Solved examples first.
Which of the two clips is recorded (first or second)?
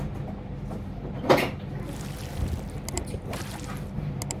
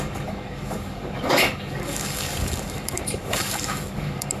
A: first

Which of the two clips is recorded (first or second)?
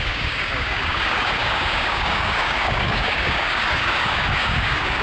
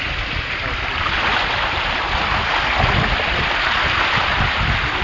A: second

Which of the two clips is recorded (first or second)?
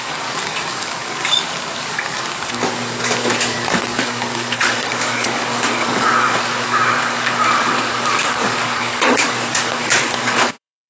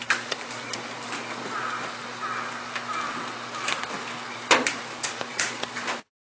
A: second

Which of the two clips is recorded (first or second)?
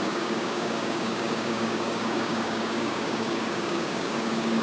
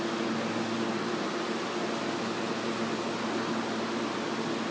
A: second